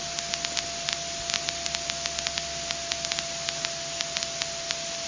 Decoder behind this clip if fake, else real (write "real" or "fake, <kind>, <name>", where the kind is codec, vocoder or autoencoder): real